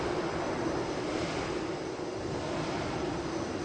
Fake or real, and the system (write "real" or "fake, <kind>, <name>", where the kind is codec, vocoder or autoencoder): real